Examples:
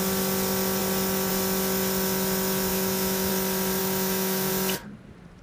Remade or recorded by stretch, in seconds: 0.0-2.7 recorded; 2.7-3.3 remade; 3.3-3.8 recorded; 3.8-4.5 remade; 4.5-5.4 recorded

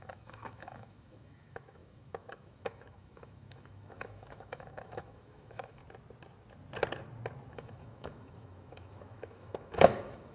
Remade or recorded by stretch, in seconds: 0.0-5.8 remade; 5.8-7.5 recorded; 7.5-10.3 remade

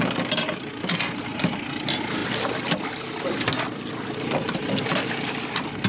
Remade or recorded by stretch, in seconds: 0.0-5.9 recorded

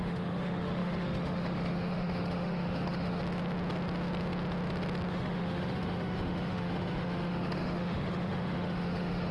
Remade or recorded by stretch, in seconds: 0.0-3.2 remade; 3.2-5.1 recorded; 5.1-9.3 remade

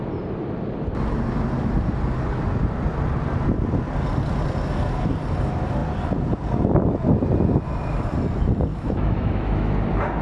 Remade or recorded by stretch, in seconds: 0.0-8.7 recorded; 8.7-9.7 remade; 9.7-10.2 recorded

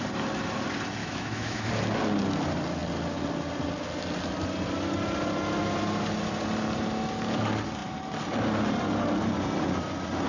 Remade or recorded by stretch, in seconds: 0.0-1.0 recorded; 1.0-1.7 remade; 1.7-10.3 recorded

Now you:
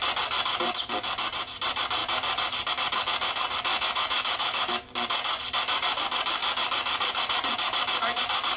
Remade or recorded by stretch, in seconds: 0.0-3.7 recorded; 3.7-4.7 remade; 4.7-8.6 recorded

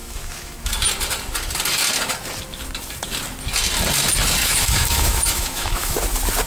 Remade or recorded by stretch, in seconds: 0.0-0.7 remade; 0.7-4.4 recorded; 4.4-6.0 remade; 6.0-6.5 recorded